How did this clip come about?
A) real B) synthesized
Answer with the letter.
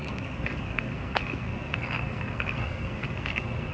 B